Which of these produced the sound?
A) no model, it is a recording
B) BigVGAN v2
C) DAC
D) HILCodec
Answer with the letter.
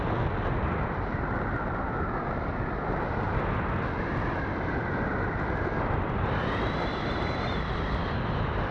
A